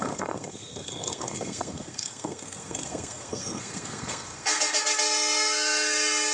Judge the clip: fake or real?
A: fake